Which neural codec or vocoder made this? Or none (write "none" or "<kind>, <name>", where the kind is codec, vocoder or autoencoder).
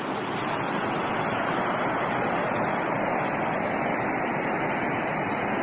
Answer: none